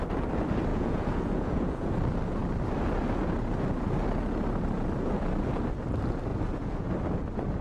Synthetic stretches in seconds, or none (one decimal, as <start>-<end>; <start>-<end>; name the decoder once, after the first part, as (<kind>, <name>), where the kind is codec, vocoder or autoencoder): 0.7-1.9 (vocoder, Vocos); 6.3-6.9